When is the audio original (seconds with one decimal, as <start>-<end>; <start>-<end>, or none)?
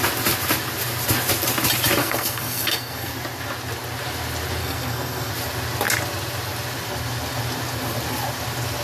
0.0-2.0; 3.1-4.6; 5.3-8.8